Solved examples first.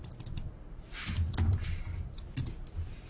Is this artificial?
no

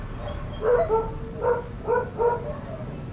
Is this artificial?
no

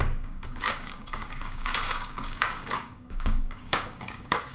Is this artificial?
yes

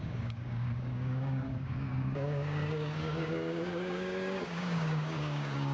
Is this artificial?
yes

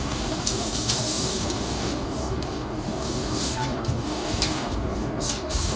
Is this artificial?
yes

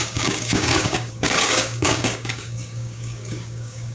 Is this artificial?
yes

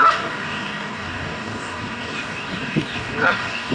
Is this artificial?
yes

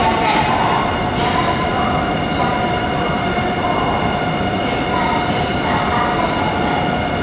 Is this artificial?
no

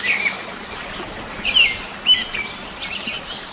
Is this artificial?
no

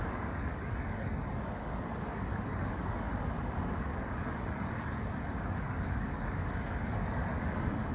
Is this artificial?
yes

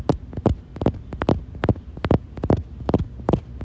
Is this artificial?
no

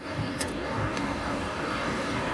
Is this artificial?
yes